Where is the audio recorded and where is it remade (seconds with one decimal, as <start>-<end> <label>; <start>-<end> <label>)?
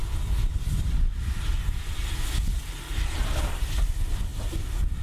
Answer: 0.0-5.0 recorded